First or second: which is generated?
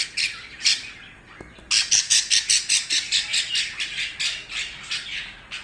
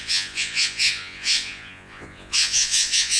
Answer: second